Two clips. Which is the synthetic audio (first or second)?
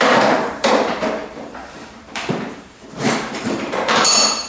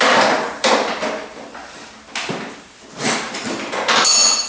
first